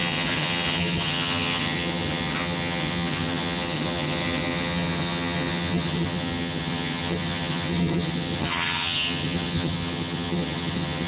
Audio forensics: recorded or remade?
remade